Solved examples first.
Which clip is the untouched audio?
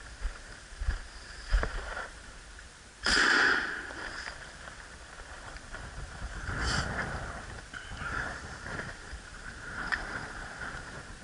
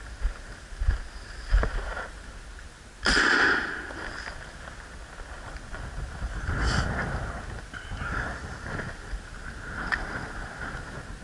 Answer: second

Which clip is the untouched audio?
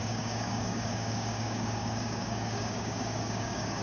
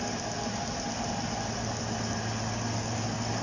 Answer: second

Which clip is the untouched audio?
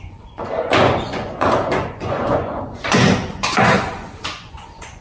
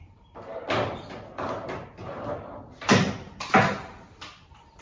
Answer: second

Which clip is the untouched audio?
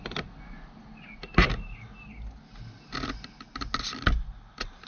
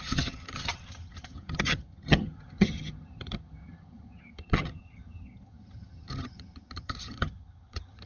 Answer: first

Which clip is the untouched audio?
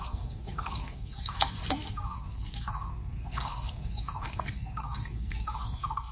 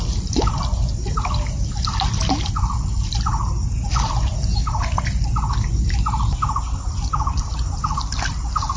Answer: second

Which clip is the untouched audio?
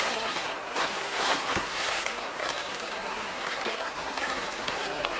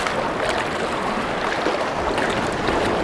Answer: second